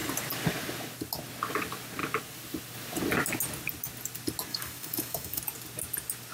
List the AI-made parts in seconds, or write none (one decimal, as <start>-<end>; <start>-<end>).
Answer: 4.5-5.4